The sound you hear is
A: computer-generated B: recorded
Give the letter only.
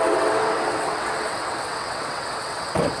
A